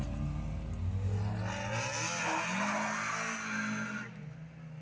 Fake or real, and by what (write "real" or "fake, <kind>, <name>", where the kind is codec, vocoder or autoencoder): real